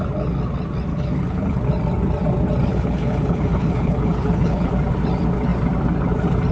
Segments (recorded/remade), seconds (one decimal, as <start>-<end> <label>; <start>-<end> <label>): 0.0-0.9 recorded; 0.9-1.6 remade; 1.6-2.7 recorded; 2.7-4.7 remade; 4.7-6.5 recorded